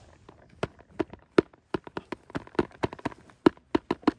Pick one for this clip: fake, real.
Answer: real